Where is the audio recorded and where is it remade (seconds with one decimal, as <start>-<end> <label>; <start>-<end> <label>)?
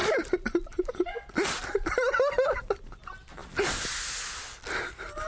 0.0-5.3 recorded